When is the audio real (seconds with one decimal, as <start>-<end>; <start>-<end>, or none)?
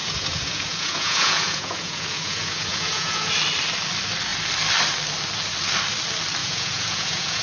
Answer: 3.3-6.4